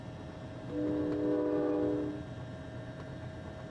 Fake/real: real